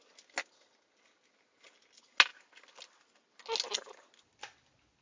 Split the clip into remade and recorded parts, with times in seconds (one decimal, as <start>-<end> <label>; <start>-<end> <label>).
0.0-5.0 recorded